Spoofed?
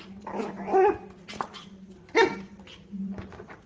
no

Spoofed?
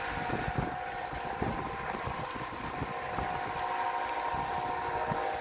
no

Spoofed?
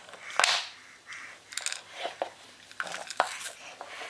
no